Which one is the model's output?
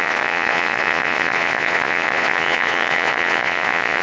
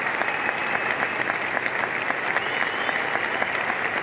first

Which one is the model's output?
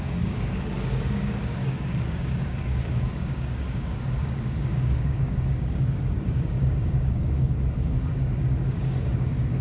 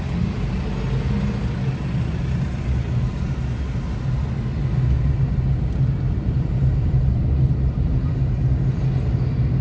first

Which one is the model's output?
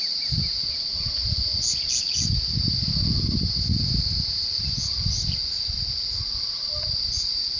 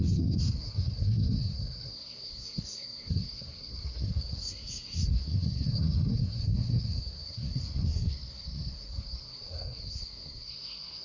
second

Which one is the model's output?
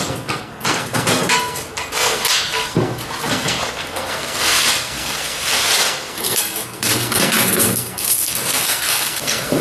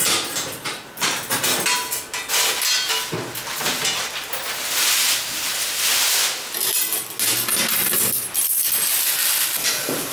first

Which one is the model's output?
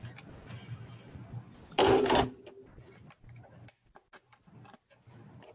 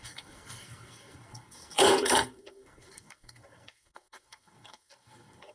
second